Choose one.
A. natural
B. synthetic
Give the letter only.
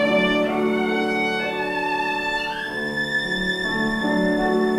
A